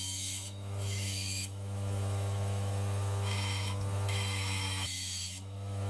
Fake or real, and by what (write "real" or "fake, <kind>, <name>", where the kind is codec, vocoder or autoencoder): fake, autoencoder, DAC-VAE